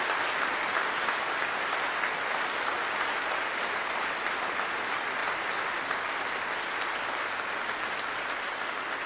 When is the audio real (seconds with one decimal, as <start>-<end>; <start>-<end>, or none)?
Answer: 0.0-9.1